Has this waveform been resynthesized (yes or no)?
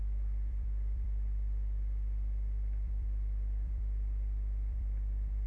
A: yes